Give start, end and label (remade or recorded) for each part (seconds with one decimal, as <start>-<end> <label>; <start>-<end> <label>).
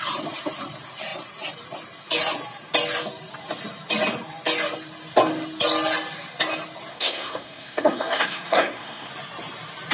0.0-6.9 recorded; 6.9-9.1 remade; 9.1-9.9 recorded